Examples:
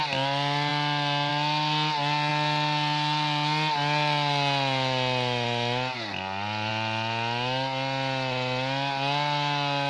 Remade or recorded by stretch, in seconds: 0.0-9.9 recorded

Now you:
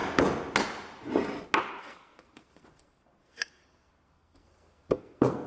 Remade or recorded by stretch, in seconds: 0.0-1.8 recorded; 1.8-5.5 remade

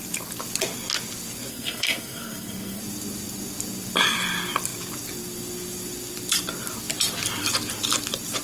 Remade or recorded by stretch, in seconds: 0.0-1.5 recorded; 1.5-2.8 remade; 2.8-8.4 recorded

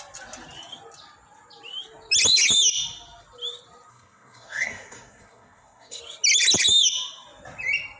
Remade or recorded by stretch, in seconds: 0.0-3.9 recorded; 3.9-6.0 remade; 6.0-8.0 recorded

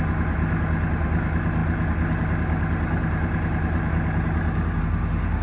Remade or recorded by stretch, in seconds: 0.0-5.4 recorded

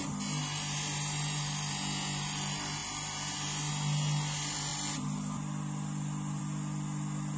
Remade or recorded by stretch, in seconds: 0.0-7.4 recorded